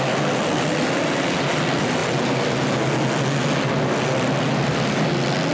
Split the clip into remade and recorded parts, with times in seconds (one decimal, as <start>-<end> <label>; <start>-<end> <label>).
0.0-5.5 recorded